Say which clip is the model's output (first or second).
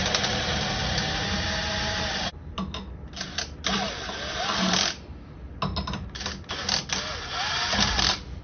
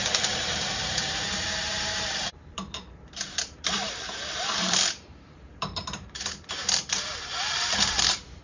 second